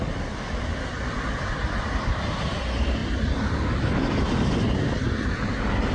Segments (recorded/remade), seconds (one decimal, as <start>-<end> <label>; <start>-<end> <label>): 0.0-0.7 recorded; 0.7-1.5 remade; 1.5-5.9 recorded